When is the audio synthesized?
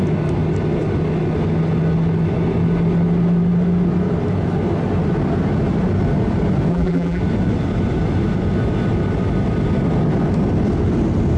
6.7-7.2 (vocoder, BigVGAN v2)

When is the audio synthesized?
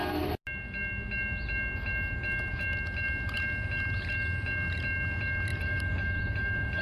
5.5-6.8 (vocoder, BigVGAN v2)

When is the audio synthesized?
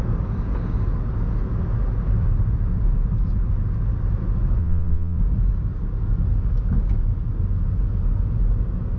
4.6-5.2 (vocoder, WaveNeXt)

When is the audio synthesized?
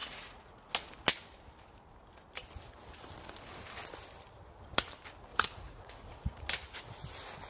0.0-0.7 (vocoder, Vocos); 5.3-6.5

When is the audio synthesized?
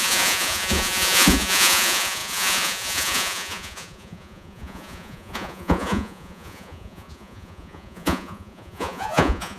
0.0-9.6 (vocoder, Vocos)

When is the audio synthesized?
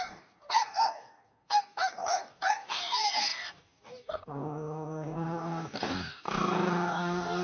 0.0-7.4 (codec, DAC)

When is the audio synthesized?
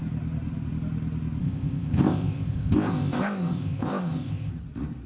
1.4-4.5 (codec, ZipCodec)